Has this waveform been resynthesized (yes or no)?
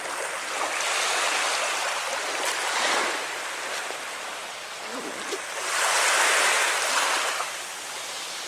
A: no